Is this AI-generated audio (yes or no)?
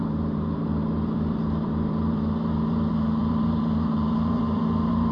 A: yes